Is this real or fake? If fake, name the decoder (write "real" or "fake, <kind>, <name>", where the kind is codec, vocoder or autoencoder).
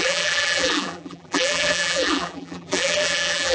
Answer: fake, vocoder, BigVGAN v2